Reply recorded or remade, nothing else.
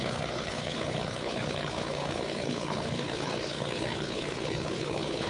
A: remade